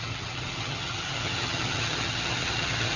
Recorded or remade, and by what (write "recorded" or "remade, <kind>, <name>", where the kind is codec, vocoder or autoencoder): remade, vocoder, HiFi-GAN